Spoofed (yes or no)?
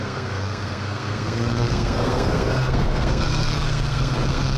yes